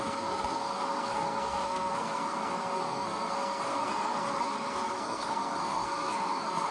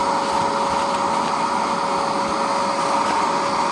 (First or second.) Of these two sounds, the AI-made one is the first